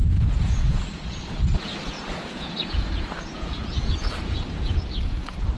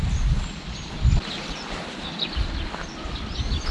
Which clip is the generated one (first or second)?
first